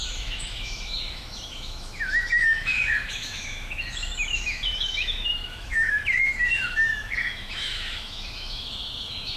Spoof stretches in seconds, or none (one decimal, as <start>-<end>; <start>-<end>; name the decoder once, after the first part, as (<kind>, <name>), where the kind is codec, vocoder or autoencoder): 0.0-9.4 (autoencoder, DAC-VAE)

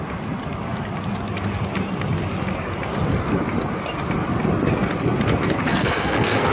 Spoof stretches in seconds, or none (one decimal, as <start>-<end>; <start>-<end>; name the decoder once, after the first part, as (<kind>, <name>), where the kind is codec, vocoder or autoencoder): 5.7-6.5 (codec, SNAC)

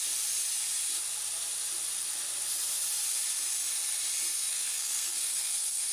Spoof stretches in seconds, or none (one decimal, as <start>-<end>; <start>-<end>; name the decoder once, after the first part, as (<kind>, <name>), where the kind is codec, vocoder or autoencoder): 4.5-5.9 (codec, SNAC)